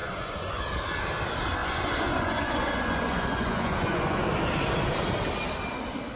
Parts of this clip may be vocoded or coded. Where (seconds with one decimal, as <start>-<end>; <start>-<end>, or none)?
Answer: 0.0-0.6; 1.6-4.2